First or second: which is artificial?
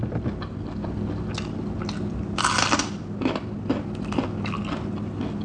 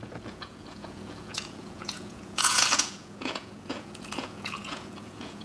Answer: second